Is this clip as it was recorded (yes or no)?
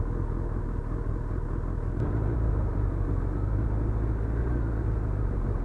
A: yes